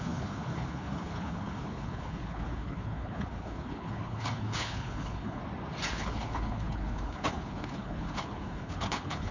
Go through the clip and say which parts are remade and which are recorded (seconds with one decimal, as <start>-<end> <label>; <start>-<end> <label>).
0.0-5.4 remade; 5.4-5.9 recorded; 5.9-9.3 remade